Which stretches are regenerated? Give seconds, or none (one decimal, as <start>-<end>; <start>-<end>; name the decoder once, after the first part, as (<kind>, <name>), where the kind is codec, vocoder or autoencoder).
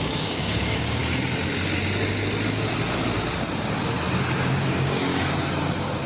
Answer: 0.0-1.0 (codec, DAC); 4.6-5.1